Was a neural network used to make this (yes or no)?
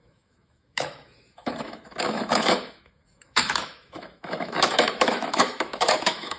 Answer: yes